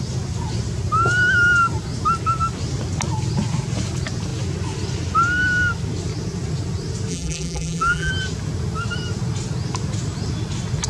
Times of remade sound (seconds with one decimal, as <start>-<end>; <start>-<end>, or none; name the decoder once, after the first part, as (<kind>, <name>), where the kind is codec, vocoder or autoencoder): 7.1-8.1 (vocoder, BigVGAN v2)